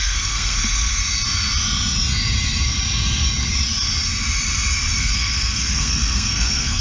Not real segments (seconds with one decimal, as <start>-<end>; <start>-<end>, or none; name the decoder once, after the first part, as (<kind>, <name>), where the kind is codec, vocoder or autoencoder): 0.0-0.9 (codec, SNAC); 5.0-6.8